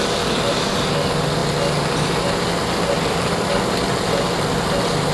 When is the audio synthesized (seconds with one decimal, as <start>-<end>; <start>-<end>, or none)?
none